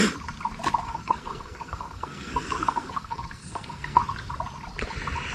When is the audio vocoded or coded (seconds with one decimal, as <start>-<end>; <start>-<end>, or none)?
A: 0.8-4.0